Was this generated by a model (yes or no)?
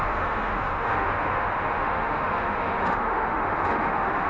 yes